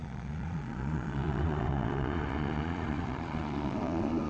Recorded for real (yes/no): no